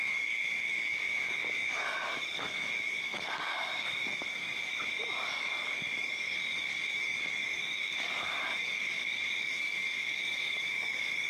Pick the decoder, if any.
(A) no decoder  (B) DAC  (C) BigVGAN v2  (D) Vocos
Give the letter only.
B